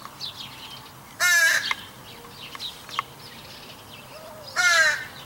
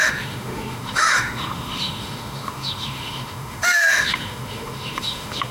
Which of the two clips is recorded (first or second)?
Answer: first